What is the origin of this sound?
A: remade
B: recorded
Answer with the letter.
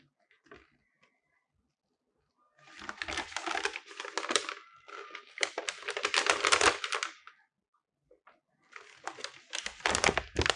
B